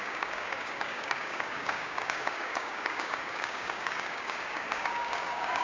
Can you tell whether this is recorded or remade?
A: remade